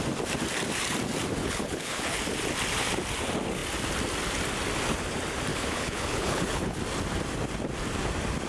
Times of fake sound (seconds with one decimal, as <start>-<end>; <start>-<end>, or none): 1.4-2.2; 5.5-6.8